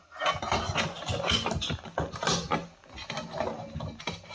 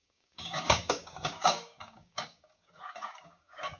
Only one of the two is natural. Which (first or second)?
first